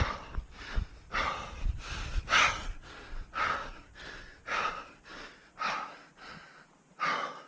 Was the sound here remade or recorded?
recorded